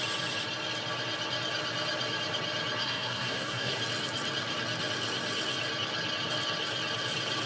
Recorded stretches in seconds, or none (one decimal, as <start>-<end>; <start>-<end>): 0.0-2.8; 3.8-7.5